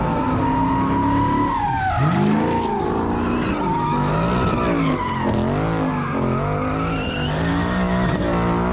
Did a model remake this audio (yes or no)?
no